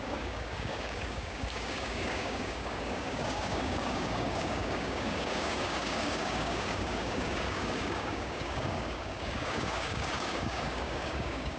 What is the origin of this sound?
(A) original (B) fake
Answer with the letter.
B